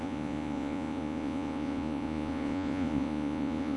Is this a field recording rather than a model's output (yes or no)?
no